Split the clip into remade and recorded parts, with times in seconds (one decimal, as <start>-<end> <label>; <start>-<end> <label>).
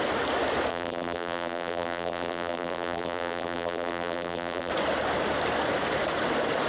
0.0-0.7 recorded; 0.7-4.7 remade; 4.7-6.7 recorded